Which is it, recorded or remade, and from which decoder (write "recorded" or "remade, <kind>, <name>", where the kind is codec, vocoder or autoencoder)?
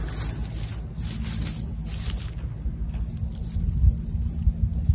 recorded